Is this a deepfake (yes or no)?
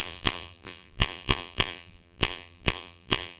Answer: yes